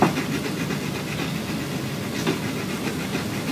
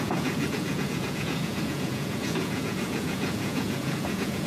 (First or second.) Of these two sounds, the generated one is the second